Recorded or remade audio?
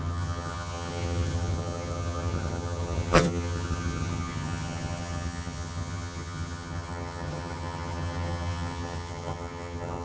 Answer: remade